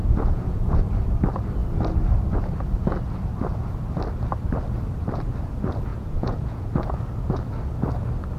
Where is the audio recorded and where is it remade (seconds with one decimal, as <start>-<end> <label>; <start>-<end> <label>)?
0.0-0.7 remade; 0.7-5.9 recorded; 5.9-6.7 remade; 6.7-8.4 recorded